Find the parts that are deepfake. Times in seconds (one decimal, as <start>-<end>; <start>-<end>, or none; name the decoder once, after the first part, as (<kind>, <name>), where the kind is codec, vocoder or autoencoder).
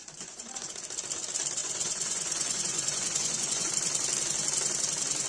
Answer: 0.0-0.7 (vocoder, Vocos); 1.6-3.7